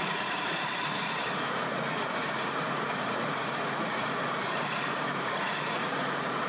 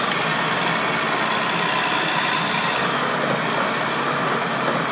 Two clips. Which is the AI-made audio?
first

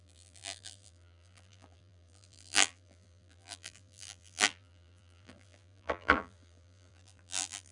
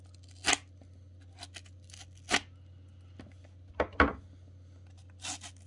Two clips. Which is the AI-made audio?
first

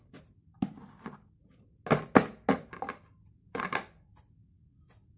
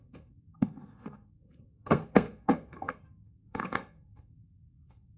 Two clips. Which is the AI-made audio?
second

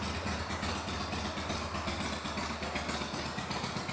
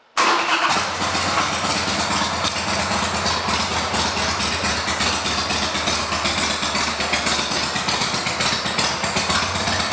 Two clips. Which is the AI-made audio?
first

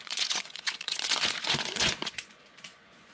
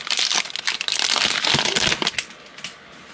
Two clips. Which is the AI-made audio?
first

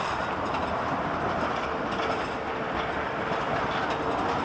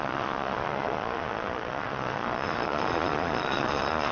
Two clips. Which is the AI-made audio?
second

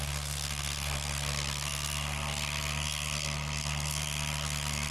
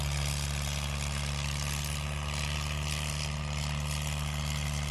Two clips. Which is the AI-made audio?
first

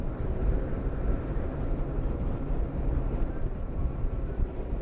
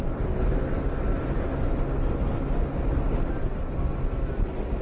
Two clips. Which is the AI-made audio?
first